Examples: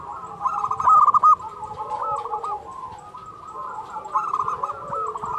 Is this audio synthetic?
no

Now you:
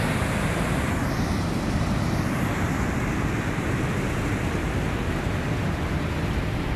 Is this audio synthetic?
no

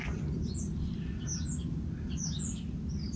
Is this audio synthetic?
no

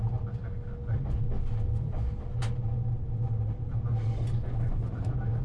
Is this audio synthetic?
no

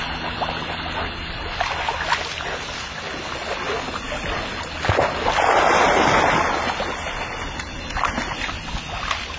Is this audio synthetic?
no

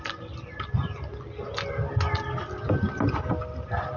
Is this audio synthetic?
no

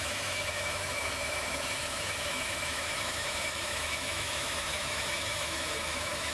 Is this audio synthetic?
yes